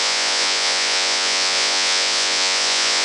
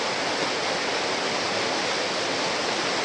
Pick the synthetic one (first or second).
first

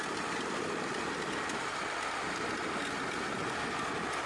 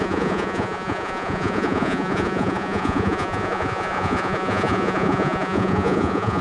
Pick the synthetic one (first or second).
second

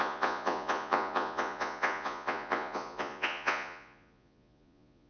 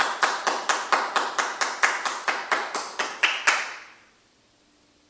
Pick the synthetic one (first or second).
first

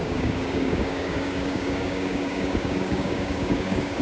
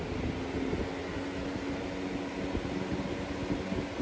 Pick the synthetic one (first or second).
first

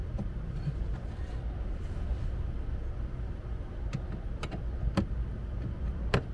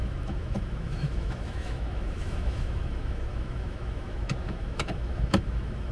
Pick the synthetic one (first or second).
second